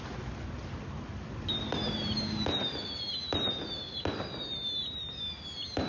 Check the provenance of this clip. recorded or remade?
recorded